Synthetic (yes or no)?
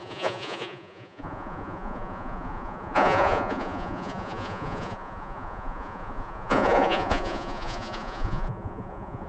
yes